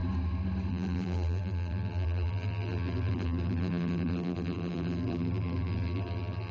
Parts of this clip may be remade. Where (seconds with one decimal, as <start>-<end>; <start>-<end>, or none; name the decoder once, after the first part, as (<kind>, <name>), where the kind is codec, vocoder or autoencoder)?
0.7-6.5 (vocoder, BigVGAN v2)